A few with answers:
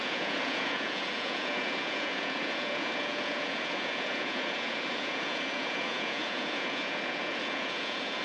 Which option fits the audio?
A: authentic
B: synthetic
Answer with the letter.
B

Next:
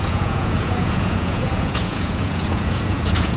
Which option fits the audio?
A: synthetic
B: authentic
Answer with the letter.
A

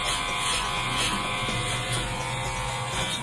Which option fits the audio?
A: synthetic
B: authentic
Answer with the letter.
A